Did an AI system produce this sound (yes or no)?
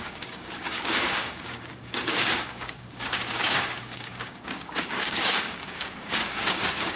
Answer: yes